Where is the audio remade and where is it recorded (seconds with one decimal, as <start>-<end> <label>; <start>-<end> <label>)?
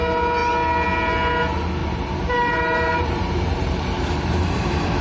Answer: 0.0-1.8 recorded; 1.8-4.6 remade; 4.6-5.0 recorded